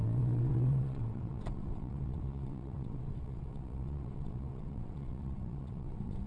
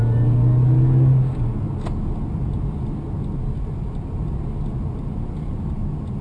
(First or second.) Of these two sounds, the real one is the second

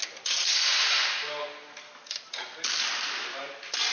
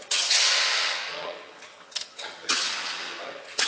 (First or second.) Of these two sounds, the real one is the first